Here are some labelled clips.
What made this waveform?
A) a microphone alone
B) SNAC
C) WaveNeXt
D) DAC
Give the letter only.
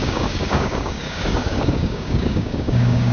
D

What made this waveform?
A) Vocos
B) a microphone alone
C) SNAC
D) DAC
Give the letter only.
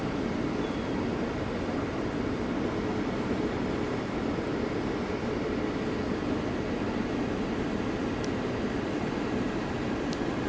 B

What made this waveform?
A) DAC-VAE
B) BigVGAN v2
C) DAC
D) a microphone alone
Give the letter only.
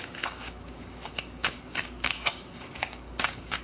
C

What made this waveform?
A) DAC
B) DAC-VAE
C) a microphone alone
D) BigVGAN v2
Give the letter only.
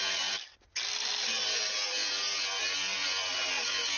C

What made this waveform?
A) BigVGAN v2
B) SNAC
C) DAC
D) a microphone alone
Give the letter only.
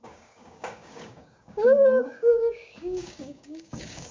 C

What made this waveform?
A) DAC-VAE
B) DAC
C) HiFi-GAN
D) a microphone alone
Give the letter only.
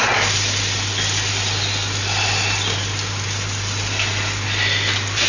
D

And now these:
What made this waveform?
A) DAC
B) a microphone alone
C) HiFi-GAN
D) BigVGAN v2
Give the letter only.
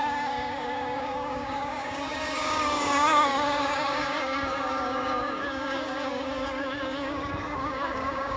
A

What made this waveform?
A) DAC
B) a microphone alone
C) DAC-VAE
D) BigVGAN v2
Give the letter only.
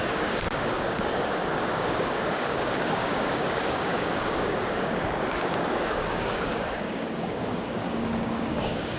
A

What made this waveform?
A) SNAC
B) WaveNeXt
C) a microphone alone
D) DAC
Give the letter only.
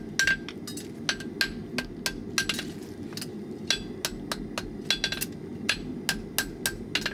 C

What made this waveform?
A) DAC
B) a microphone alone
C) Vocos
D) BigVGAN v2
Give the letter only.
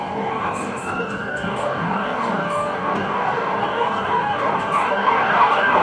A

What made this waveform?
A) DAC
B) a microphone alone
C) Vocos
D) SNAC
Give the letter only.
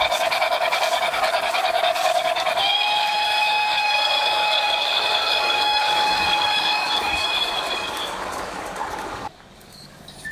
A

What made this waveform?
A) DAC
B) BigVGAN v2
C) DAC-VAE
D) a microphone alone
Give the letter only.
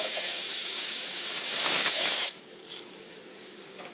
A